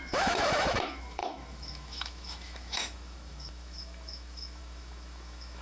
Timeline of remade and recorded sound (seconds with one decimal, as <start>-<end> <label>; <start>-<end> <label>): 0.0-5.6 remade